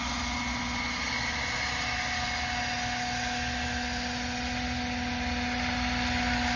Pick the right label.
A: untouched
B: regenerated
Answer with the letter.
A